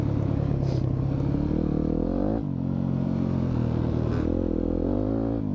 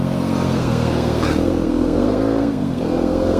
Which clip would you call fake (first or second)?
second